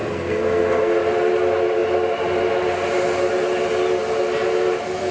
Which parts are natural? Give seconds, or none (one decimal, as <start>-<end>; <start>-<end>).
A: 1.0-5.1